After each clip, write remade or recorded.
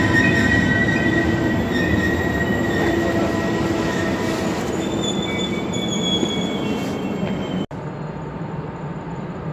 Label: recorded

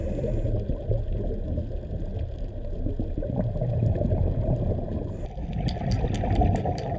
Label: recorded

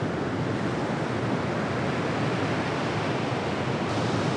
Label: recorded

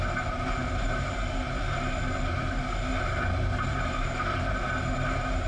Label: remade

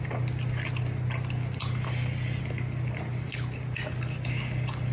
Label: recorded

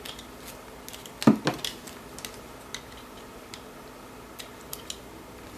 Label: recorded